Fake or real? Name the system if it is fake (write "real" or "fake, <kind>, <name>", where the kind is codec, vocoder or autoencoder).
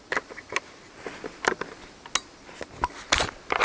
real